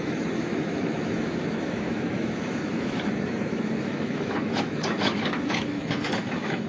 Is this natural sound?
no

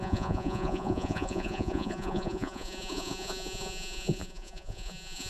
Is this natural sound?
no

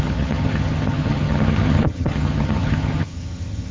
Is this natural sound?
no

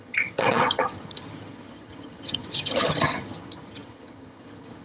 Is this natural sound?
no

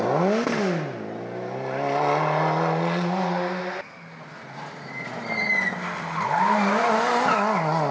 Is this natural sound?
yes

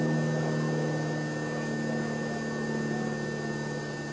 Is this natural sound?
yes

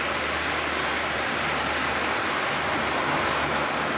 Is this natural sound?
yes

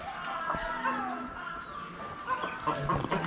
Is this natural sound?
yes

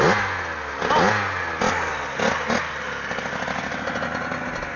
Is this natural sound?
yes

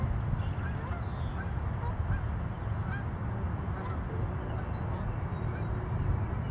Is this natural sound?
yes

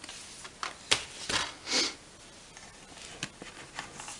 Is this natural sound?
yes